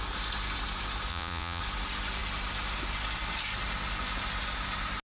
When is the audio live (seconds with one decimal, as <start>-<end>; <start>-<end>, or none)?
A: 0.0-1.1; 1.6-5.1